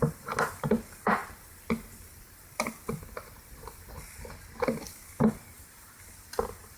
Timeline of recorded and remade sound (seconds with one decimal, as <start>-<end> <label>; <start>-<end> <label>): 0.0-1.2 remade; 1.2-5.3 recorded; 5.3-6.8 remade